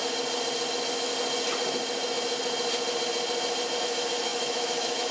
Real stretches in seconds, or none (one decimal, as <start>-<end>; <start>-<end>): 0.0-0.7; 1.1-3.8